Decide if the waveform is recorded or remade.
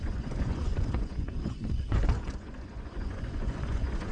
remade